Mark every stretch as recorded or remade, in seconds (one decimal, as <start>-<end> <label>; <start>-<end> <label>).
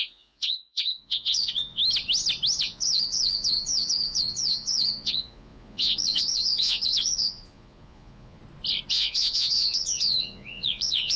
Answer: 0.0-1.8 remade; 1.8-2.6 recorded; 2.6-8.4 remade; 8.4-8.9 recorded; 8.9-11.2 remade